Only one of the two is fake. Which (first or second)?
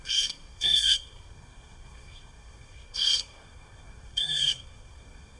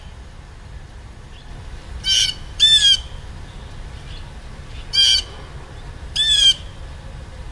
first